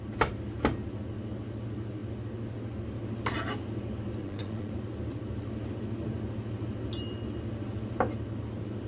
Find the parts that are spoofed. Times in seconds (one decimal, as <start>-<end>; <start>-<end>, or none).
4.2-4.7